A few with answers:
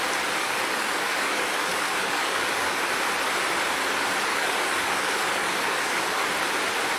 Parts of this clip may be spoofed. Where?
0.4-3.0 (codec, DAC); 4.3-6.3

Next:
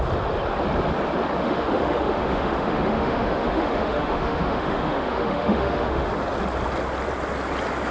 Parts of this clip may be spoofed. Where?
1.4-6.1 (autoencoder, DAC-VAE)

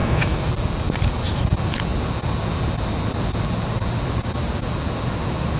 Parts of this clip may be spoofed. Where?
0.0-0.5 (autoencoder, DAC-VAE)

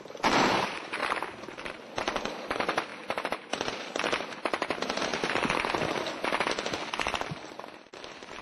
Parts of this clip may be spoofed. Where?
0.0-1.0 (vocoder, BigVGAN v2); 1.7-5.1; 7.7-8.4

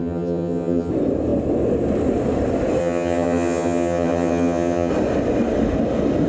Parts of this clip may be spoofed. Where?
0.0-0.9 (vocoder, HiFi-GAN); 2.8-4.9

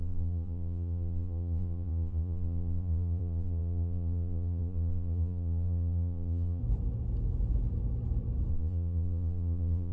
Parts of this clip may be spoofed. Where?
0.0-6.6 (vocoder, Vocos); 8.5-9.9

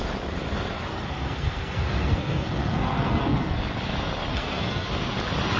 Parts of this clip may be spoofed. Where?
0.9-3.6 (codec, SNAC); 4.3-4.9